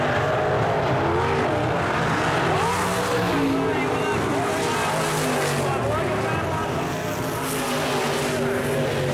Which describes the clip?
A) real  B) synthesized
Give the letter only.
A